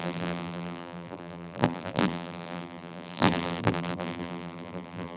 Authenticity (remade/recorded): remade